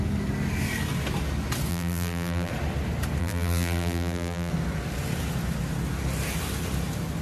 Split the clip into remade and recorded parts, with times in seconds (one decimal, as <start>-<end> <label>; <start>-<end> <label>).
0.0-1.7 recorded; 1.7-2.5 remade; 2.5-3.2 recorded; 3.2-4.5 remade; 4.5-7.2 recorded